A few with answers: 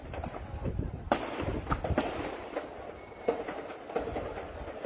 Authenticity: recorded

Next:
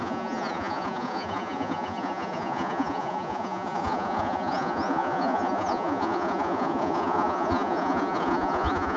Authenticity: remade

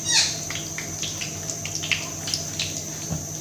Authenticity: recorded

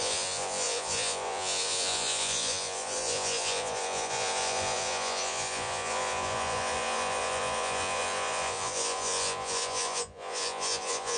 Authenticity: remade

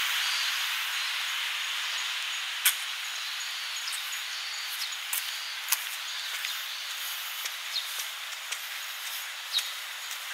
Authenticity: recorded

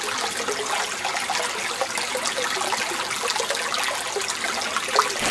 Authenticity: recorded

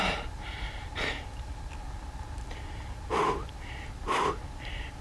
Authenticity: recorded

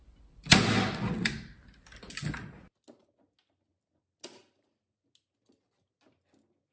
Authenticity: recorded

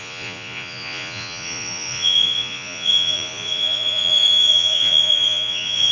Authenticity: remade